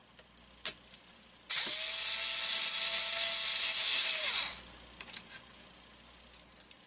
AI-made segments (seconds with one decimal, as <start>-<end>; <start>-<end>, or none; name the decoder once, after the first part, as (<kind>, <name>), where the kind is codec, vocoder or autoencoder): 3.6-4.2 (autoencoder, DAC-VAE)